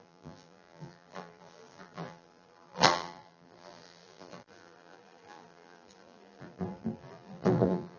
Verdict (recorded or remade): remade